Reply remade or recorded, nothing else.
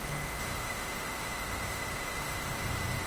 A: remade